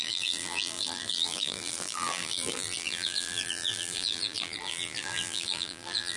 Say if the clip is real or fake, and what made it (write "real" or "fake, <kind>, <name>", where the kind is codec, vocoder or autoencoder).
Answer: fake, vocoder, BigVGAN v2